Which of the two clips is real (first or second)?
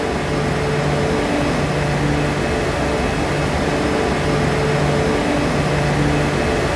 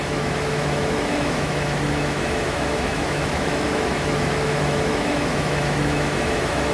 first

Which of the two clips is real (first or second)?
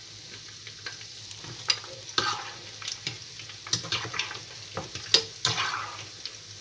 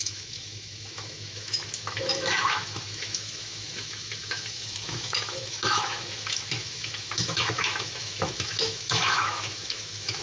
first